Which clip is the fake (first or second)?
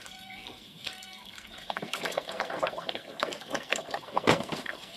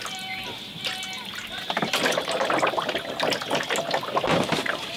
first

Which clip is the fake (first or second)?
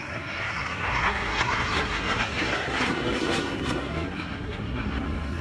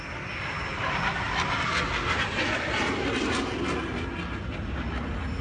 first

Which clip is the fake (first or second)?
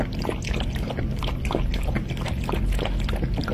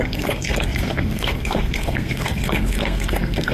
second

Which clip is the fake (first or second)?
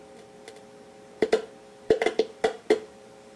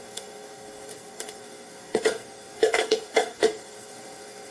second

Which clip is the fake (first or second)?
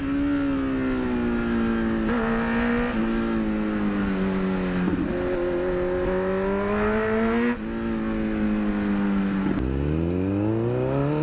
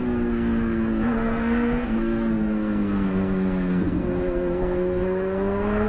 second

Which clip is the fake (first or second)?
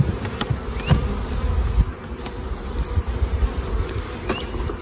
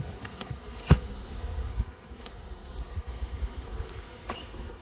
second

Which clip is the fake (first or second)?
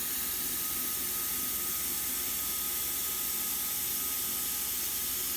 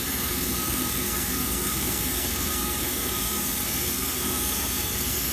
second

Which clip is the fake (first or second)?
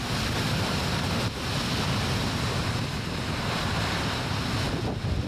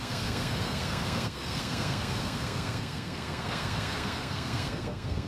second